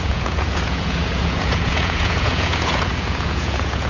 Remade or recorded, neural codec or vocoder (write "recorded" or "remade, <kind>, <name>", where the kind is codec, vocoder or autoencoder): remade, vocoder, Vocos